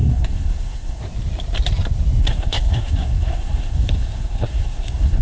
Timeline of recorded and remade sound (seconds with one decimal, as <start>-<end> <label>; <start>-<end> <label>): 0.0-1.0 remade; 1.0-2.2 recorded; 2.2-5.2 remade

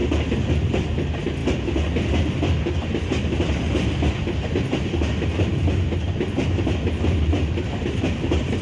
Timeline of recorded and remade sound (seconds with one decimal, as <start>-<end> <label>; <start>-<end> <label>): 0.0-8.6 recorded

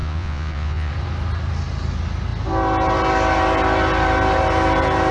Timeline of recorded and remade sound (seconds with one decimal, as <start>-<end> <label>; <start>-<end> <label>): 0.0-0.9 remade; 0.9-5.1 recorded

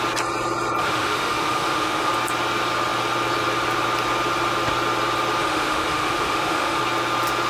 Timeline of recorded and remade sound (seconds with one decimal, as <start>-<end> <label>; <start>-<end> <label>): 0.0-0.8 recorded; 0.8-2.1 remade; 2.1-5.4 recorded; 5.4-6.8 remade; 6.8-7.5 recorded

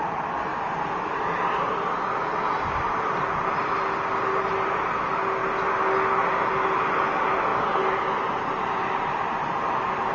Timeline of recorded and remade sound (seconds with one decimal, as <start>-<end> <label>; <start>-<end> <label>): 0.0-10.1 recorded

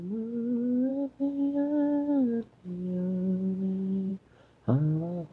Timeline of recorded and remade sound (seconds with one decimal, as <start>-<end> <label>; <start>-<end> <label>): 0.0-5.3 recorded

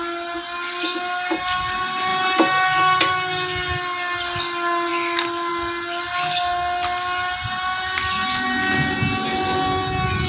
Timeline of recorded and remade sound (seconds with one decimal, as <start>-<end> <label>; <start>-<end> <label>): 0.0-10.3 recorded